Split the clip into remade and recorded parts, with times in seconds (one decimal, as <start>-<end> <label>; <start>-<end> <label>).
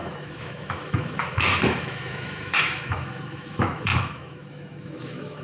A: 0.0-5.4 remade